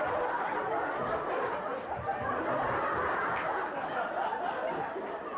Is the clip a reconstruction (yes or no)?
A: no